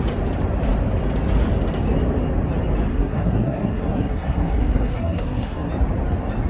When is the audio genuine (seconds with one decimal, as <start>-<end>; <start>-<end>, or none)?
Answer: 0.0-2.9; 5.7-6.5